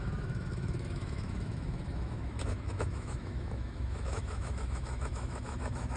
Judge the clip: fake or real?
fake